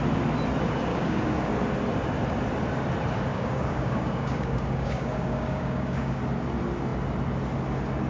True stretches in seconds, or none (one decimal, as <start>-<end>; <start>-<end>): 0.0-0.9; 1.5-3.3; 6.2-8.1